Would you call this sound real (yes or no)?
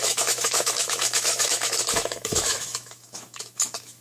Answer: no